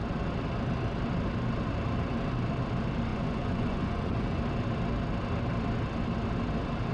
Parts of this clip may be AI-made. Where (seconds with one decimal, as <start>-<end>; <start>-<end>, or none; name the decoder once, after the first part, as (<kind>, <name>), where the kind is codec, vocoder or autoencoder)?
3.1-4.4 (vocoder, Vocos)